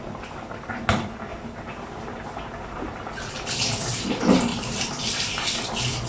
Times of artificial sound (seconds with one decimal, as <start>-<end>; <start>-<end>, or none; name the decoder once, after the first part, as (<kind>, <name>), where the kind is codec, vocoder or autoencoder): 1.3-3.0 (vocoder, BigVGAN v2); 4.5-5.4